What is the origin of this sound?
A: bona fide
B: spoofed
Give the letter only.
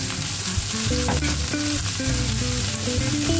A